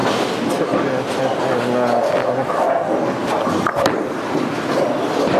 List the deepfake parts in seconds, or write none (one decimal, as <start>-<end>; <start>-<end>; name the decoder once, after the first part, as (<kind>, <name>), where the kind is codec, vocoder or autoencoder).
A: none